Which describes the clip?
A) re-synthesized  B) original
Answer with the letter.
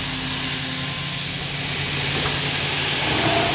B